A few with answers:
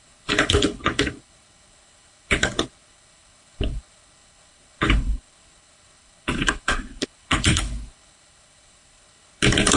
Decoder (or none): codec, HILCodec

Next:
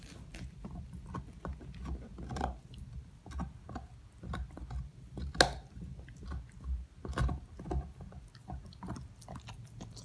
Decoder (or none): none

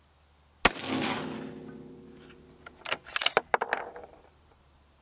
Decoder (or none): none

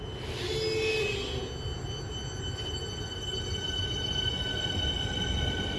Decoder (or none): none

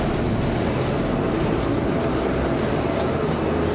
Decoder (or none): none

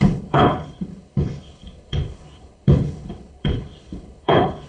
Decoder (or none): codec, HILCodec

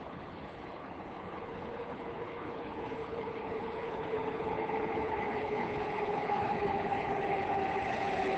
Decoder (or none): codec, HILCodec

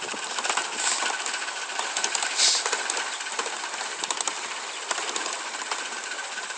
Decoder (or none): none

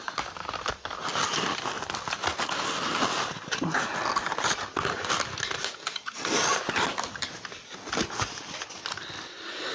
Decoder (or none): none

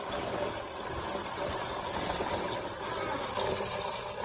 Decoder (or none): none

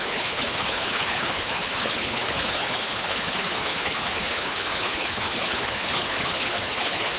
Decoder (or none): codec, HILCodec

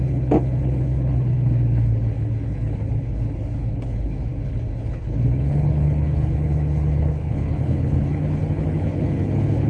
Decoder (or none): codec, HILCodec